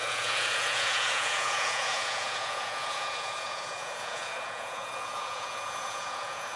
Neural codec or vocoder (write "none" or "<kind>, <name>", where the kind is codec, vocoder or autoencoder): vocoder, Vocos